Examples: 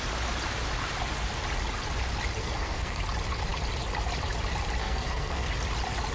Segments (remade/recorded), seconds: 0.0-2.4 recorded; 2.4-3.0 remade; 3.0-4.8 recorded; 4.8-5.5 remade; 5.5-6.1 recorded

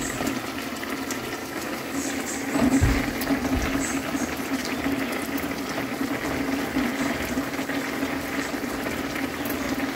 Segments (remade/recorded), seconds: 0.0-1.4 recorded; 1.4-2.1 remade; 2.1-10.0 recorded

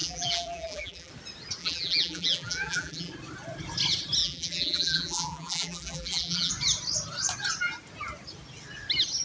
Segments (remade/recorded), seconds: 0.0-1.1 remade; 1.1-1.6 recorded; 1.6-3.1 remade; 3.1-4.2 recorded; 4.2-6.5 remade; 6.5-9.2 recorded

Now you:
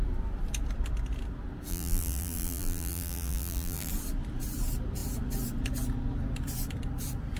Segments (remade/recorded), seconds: 0.0-1.7 recorded; 1.7-3.9 remade; 3.9-7.4 recorded